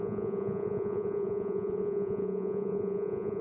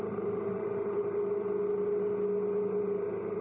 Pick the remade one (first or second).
first